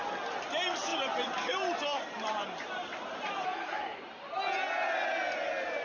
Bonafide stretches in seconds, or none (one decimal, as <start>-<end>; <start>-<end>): 0.0-0.9; 4.2-5.8